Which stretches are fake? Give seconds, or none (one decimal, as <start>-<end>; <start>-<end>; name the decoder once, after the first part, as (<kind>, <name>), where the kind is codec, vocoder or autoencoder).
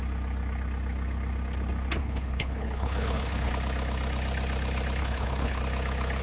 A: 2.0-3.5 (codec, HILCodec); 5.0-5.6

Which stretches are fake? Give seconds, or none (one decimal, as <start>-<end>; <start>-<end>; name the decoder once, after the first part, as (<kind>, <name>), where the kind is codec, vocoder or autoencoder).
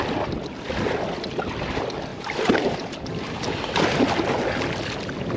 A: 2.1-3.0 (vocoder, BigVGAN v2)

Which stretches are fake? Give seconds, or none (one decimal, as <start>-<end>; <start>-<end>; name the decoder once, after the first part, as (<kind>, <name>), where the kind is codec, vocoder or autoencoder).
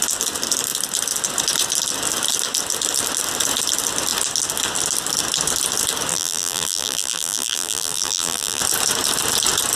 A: 6.1-8.6 (vocoder, BigVGAN v2)